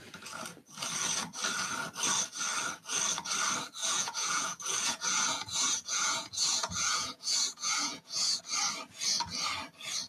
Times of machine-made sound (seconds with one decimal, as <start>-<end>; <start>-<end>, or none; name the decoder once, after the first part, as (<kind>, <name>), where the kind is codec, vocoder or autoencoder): 3.8-8.4 (vocoder, Vocos)